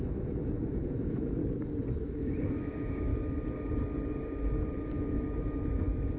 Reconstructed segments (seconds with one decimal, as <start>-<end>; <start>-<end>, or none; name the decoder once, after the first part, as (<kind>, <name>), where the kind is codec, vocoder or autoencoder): 0.0-1.4 (autoencoder, DAC-VAE); 1.9-3.1; 4.7-6.2